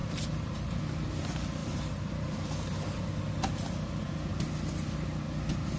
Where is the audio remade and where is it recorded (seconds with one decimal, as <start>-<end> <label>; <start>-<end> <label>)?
0.0-0.8 remade; 0.8-1.6 recorded; 1.6-2.6 remade; 2.6-5.8 recorded